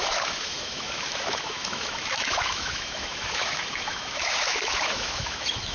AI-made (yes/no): yes